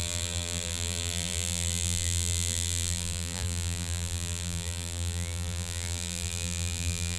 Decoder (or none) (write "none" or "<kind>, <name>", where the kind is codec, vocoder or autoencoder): vocoder, BigVGAN v2